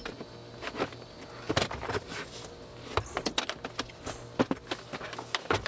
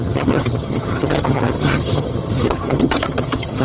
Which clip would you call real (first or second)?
first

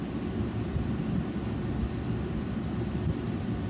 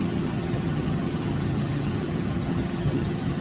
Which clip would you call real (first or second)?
first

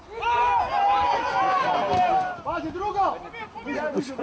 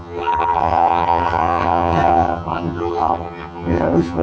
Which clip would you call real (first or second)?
first